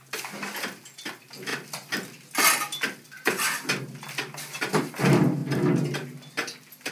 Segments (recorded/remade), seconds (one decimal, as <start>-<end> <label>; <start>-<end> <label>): 0.0-6.9 recorded